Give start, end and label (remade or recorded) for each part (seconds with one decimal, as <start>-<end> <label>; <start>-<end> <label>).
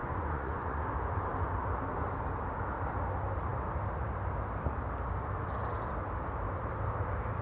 0.0-0.8 remade; 0.8-7.4 recorded